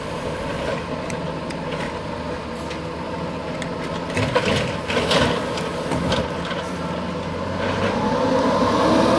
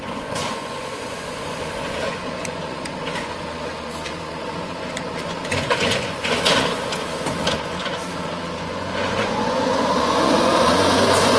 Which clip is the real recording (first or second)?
first